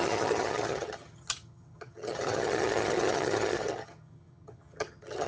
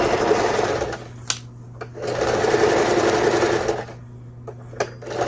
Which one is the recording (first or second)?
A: second